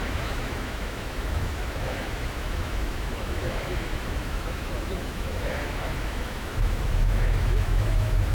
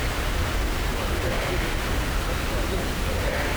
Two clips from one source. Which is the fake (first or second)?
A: first